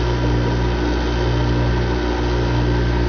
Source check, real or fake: real